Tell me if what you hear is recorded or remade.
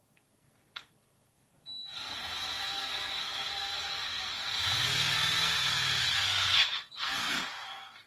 remade